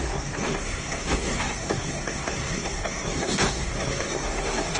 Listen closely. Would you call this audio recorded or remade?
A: remade